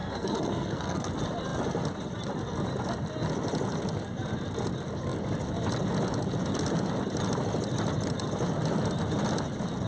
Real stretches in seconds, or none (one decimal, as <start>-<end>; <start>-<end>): 1.1-9.9